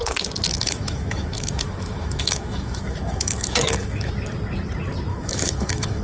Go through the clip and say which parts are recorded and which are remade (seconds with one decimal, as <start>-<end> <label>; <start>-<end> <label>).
0.0-0.5 recorded; 0.5-4.1 remade; 4.1-5.1 recorded; 5.1-6.0 remade